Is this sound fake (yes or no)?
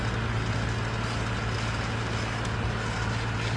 no